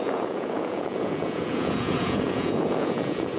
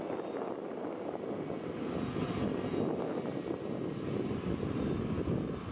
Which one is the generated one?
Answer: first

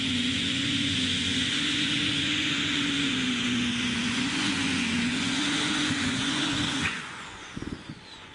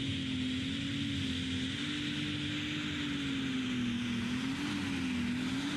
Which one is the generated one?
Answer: first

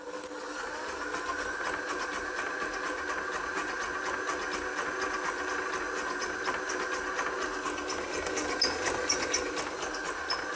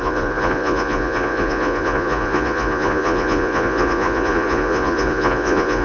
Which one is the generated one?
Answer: second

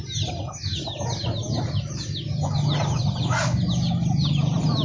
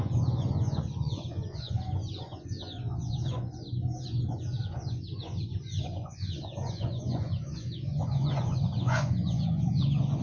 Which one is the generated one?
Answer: second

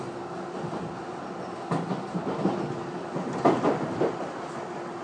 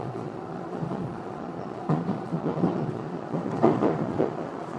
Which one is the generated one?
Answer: second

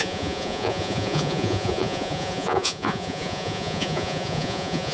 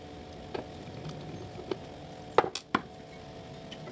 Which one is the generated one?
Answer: first